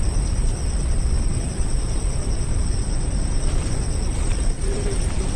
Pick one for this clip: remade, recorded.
recorded